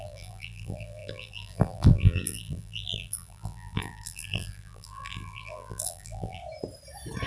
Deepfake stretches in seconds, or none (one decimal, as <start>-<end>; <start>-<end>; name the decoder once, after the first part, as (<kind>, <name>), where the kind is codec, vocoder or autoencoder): 0.0-6.4 (vocoder, BigVGAN v2)